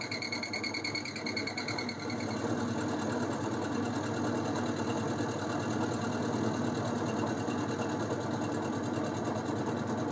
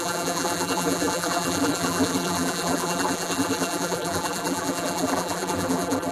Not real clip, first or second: second